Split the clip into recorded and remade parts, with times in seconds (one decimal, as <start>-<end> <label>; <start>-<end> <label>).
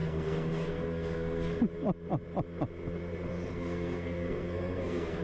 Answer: 0.0-1.6 remade; 1.6-3.5 recorded; 3.5-5.2 remade